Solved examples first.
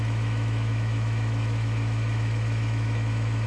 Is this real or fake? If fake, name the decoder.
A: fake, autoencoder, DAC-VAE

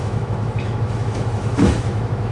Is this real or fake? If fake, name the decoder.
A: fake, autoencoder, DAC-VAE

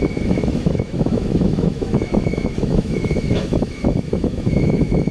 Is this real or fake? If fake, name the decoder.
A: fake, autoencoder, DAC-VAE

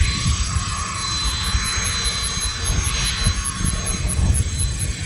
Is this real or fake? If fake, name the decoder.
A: real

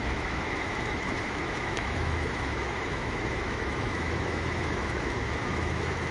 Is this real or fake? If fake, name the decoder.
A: fake, autoencoder, DAC-VAE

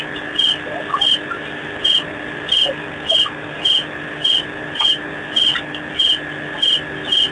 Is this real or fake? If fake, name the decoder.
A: real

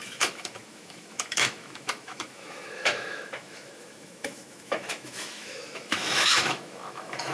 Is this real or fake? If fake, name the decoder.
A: fake, autoencoder, DAC-VAE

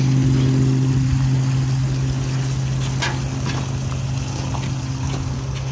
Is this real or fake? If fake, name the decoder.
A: real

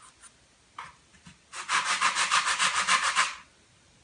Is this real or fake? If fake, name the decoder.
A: real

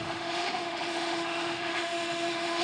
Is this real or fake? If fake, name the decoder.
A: fake, autoencoder, DAC-VAE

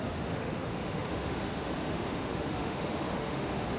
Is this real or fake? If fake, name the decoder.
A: fake, autoencoder, DAC-VAE